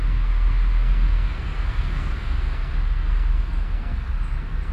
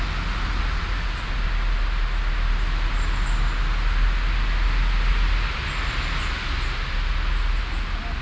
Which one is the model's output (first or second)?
first